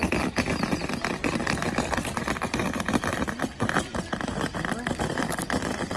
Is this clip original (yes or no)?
yes